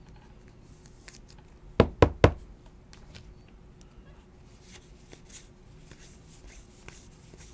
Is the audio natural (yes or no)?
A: yes